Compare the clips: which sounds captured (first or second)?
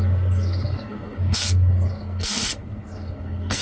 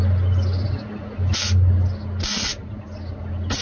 second